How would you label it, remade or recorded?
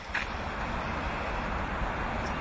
remade